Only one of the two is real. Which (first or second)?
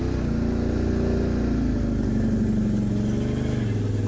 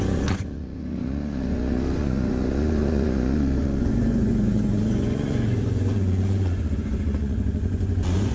first